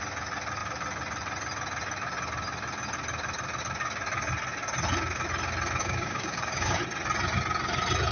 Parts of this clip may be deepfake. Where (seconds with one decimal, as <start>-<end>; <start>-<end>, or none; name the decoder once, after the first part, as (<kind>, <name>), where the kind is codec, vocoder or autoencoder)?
5.8-6.8 (codec, DAC)